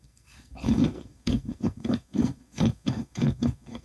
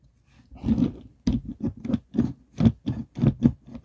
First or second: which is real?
second